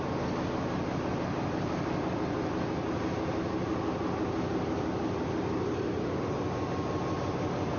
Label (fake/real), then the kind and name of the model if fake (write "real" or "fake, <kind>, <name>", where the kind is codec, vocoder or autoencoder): real